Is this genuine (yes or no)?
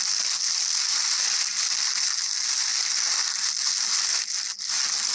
yes